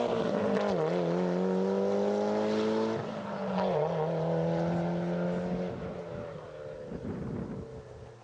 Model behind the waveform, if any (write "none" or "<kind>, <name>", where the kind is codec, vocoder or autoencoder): none